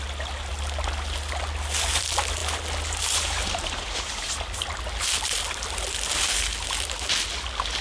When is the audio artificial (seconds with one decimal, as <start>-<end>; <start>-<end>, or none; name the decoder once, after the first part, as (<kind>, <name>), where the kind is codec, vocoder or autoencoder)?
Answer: none